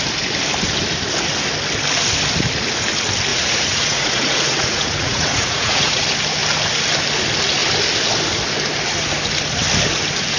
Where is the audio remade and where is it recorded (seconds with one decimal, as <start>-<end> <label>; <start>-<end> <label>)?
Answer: 0.0-3.3 recorded; 3.3-6.0 remade; 6.0-10.4 recorded